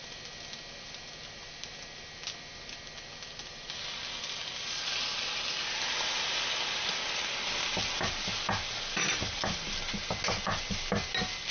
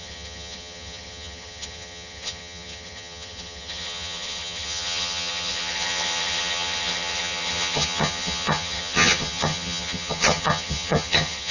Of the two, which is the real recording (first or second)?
first